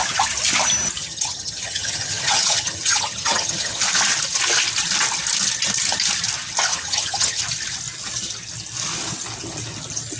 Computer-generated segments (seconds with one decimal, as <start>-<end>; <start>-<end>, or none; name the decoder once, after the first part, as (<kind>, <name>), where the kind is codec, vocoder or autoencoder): 1.0-3.8 (vocoder, HiFi-GAN); 6.7-7.4